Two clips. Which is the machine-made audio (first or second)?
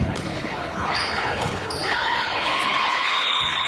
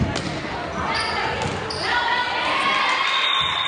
first